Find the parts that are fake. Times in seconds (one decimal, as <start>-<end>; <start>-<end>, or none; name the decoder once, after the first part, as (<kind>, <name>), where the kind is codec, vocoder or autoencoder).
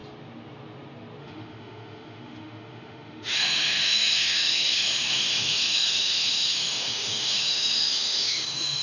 1.2-8.8 (autoencoder, DAC-VAE)